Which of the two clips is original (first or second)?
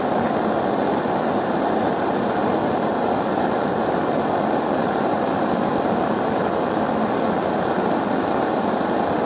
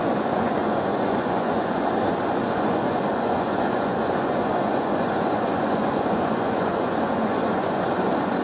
first